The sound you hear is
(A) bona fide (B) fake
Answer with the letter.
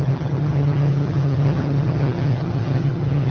B